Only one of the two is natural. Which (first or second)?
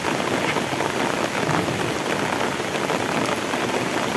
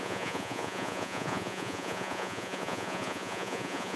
first